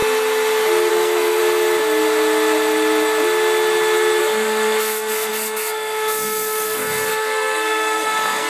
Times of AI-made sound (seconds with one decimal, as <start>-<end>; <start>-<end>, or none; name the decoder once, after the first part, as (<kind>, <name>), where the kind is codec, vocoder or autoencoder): 0.9-1.4 (codec, SNAC); 4.2-8.5